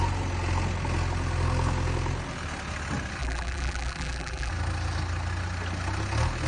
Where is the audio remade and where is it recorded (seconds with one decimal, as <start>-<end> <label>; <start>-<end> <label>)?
0.0-3.2 recorded; 3.2-4.5 remade; 4.5-6.5 recorded